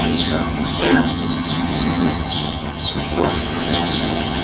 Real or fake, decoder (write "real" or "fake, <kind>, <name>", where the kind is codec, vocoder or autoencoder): fake, vocoder, HiFi-GAN